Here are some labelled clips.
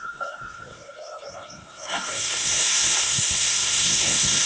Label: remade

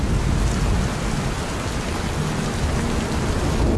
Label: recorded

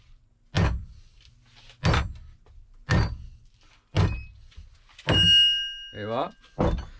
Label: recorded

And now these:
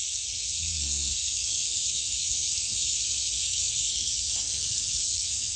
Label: remade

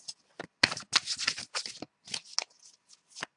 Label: recorded